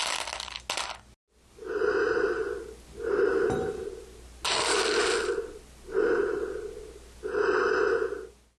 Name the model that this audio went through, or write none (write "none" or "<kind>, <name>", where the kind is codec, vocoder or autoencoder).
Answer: none